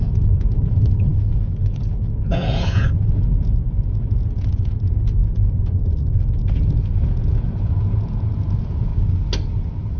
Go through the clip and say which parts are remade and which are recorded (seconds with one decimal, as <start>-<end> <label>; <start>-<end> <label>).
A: 0.0-8.9 remade; 8.9-10.0 recorded